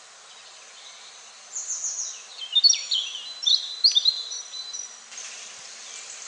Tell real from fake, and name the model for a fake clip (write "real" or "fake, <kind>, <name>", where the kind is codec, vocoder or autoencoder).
real